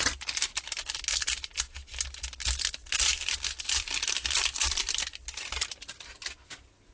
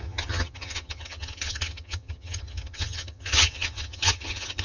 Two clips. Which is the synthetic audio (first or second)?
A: second